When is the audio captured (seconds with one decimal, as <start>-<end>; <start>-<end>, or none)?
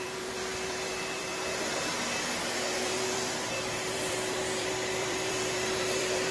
none